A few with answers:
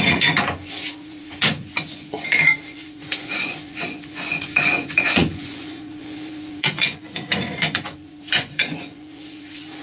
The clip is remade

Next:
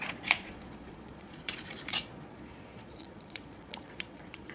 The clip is remade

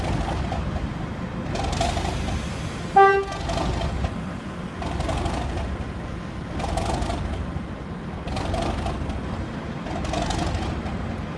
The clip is recorded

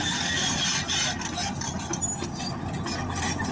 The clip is recorded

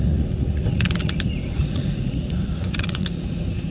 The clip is remade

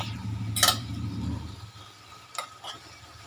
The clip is recorded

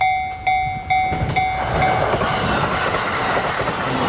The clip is recorded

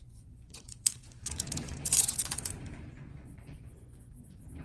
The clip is remade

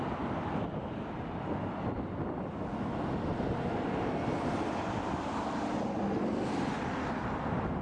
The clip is recorded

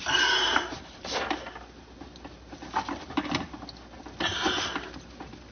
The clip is recorded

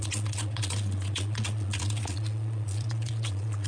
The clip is remade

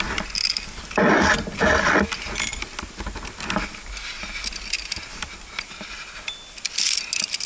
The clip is recorded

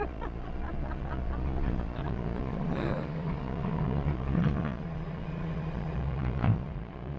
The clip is remade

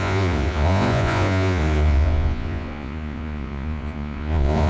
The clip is remade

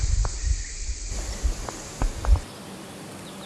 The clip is recorded